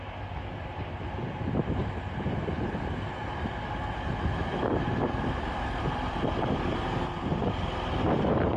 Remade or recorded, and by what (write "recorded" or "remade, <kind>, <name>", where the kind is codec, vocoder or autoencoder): remade, vocoder, BigVGAN v2